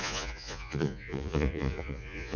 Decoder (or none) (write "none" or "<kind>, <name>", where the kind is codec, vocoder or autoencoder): vocoder, Vocos